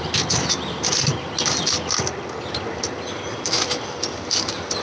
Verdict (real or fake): real